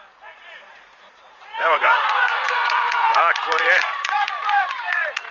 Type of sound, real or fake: fake